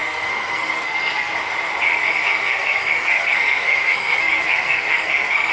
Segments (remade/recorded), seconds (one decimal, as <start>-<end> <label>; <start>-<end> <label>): 0.0-1.3 remade; 1.3-1.9 recorded; 1.9-5.5 remade